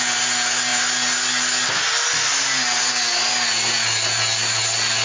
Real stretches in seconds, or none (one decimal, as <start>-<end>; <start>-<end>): 0.0-5.0